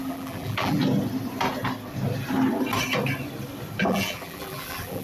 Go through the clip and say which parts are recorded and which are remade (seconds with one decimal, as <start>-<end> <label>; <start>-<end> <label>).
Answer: 0.0-0.8 remade; 0.8-3.8 recorded; 3.8-5.0 remade